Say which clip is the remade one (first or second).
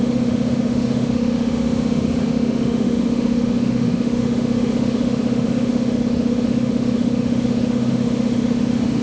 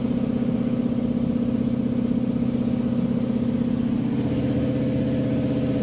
first